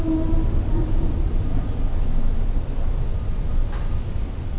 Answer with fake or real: real